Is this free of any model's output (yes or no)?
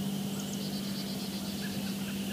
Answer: yes